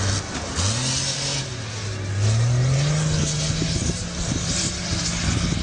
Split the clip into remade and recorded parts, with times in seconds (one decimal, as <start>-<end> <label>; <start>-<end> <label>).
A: 0.0-5.6 recorded